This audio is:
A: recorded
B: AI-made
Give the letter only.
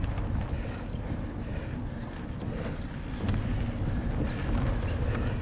A